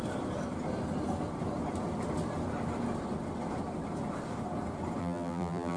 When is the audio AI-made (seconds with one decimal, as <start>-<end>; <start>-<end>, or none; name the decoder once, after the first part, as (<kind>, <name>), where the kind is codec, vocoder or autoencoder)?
5.0-5.8 (vocoder, BigVGAN v2)